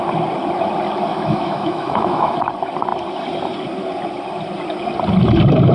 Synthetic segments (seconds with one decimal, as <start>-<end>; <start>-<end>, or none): 1.1-2.5